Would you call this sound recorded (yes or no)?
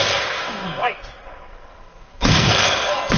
no